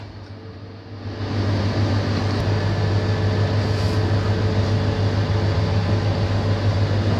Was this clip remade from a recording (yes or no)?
no